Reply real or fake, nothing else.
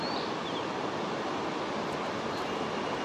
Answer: real